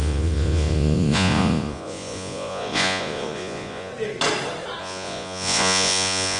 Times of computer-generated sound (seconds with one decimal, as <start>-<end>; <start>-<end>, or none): 0.0-3.9; 4.8-6.4